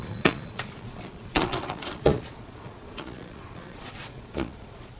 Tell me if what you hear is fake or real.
fake